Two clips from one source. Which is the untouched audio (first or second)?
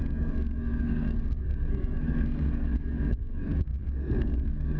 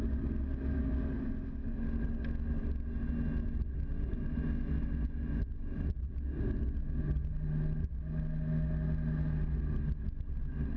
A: second